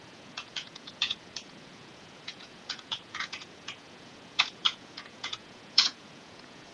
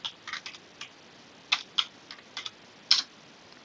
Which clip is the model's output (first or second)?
first